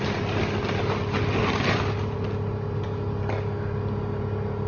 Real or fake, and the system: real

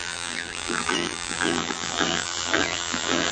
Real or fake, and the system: fake, vocoder, BigVGAN v2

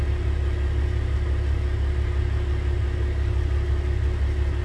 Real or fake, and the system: real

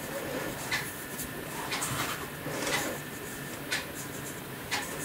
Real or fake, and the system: fake, vocoder, BigVGAN v2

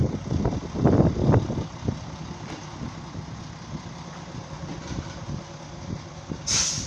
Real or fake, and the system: real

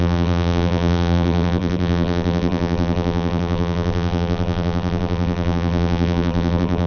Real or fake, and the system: fake, vocoder, BigVGAN v2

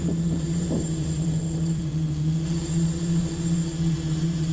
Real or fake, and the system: fake, vocoder, BigVGAN v2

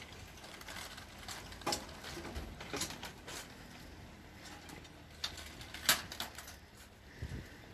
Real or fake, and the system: real